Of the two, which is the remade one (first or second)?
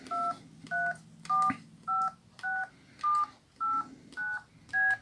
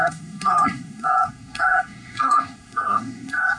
second